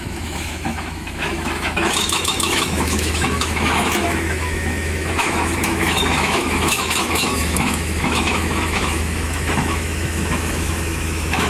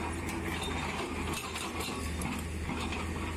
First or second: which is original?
second